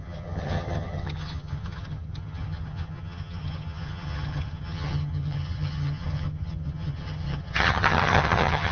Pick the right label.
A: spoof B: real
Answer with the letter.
A